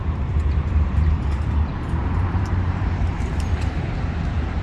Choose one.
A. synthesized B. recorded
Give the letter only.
A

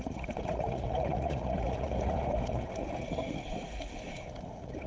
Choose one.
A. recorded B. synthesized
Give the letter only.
B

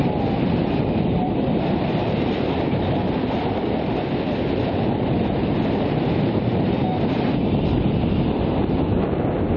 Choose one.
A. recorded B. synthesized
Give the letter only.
A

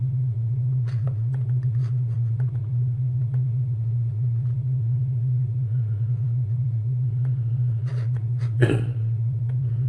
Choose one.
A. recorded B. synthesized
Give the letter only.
B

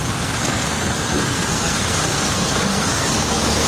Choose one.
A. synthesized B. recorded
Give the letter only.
A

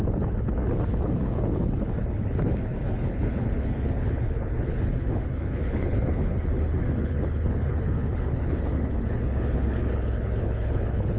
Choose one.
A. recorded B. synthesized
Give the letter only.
B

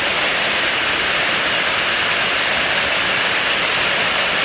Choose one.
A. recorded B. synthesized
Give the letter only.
B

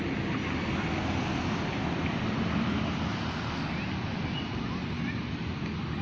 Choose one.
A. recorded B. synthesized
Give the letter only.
A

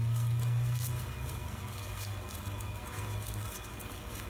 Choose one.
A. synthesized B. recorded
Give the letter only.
A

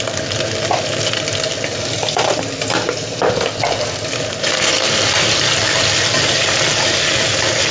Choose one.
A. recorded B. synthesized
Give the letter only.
A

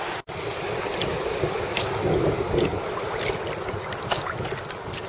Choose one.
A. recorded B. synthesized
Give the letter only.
A